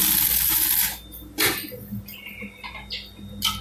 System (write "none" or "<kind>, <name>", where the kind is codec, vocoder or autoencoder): none